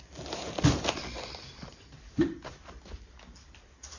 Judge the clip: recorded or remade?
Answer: recorded